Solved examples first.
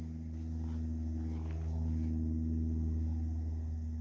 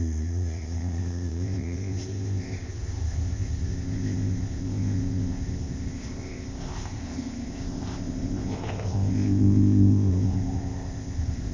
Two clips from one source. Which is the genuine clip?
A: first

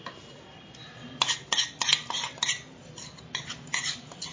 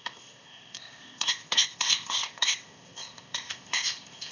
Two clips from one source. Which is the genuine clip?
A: first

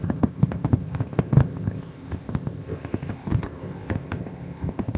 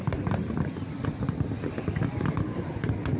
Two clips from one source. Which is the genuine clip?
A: second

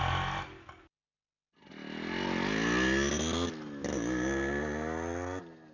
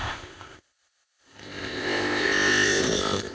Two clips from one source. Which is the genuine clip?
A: first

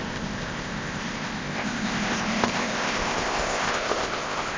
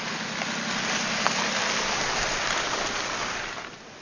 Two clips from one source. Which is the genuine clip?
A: second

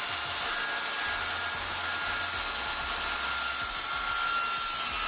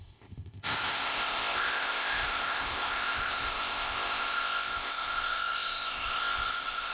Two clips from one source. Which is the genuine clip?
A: first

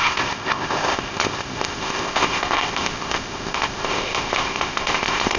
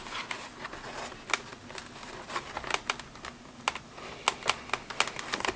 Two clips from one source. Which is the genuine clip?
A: second